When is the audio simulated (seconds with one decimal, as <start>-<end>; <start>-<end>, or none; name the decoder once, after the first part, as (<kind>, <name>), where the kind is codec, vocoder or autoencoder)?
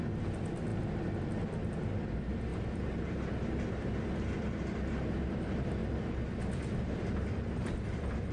0.0-2.5 (vocoder, BigVGAN v2); 4.0-5.8; 7.0-8.3